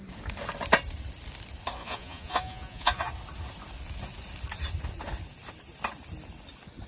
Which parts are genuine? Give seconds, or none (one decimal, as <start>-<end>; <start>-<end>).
0.0-1.8; 3.1-6.9